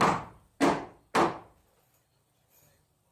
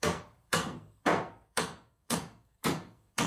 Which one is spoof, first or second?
second